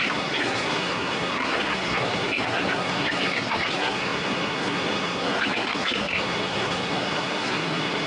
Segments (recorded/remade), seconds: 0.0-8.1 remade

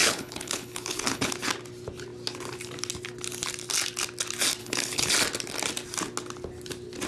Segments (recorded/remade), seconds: 0.0-1.3 remade; 1.3-4.6 recorded; 4.6-5.1 remade; 5.1-7.1 recorded

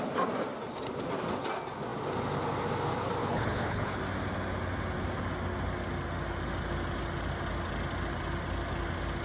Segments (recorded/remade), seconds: 0.0-3.2 recorded; 3.2-4.0 remade; 4.0-9.2 recorded